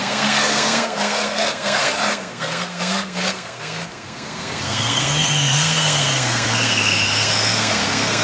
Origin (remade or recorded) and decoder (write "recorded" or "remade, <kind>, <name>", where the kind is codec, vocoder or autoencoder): remade, codec, SNAC